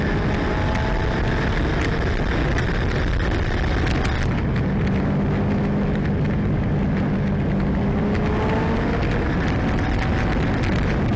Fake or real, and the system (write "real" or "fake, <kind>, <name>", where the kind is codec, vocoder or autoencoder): real